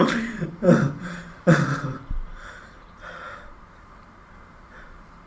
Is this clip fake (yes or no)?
yes